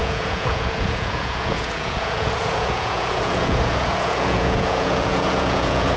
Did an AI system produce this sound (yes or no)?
yes